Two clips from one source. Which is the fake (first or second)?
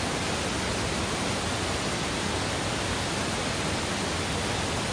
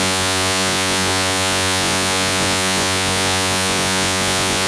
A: second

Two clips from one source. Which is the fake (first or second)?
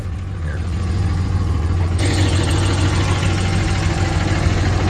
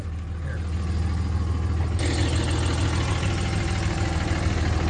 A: first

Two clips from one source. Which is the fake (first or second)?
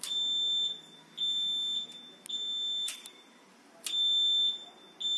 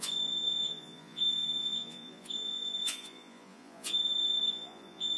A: second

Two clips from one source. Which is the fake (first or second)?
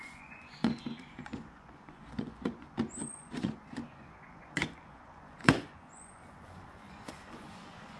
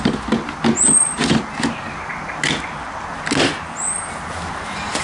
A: first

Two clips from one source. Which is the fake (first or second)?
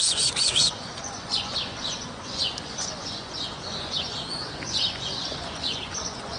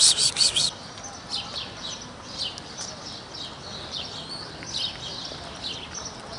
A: first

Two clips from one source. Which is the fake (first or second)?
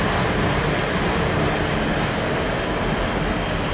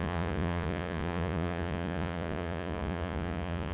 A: second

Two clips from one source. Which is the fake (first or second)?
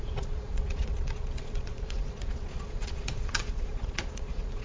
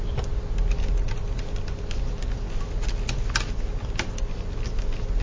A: first